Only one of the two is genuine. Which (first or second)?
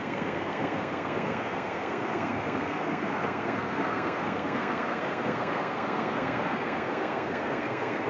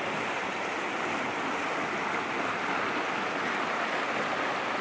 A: second